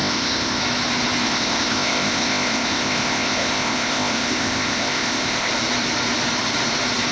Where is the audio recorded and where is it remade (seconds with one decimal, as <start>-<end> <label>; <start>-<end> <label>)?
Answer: 0.0-0.6 remade; 0.6-1.2 recorded; 1.2-5.5 remade; 5.5-7.1 recorded